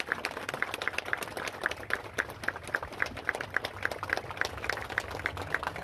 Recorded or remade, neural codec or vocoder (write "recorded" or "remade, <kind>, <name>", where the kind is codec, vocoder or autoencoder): recorded